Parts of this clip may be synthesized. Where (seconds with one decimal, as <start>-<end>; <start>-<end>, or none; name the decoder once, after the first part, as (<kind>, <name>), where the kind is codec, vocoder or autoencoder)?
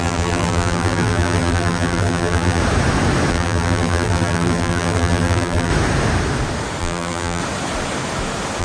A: 0.0-2.6 (vocoder, BigVGAN v2); 3.3-5.7; 6.8-7.4